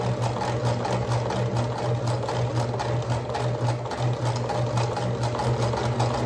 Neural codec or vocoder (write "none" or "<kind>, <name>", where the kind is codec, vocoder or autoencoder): none